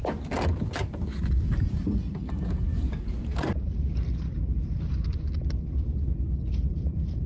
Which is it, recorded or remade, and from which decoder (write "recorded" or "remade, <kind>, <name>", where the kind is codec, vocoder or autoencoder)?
recorded